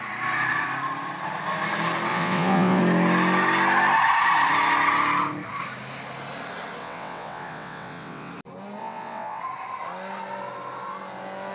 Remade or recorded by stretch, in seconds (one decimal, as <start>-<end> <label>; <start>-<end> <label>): 0.0-2.1 recorded; 2.1-2.8 remade; 2.8-6.8 recorded; 6.8-8.3 remade; 8.3-8.8 recorded; 8.8-9.4 remade; 9.4-11.5 recorded